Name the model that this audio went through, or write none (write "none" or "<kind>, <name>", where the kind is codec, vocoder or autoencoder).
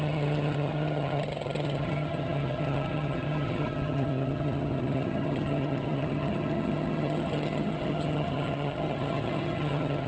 vocoder, HiFi-GAN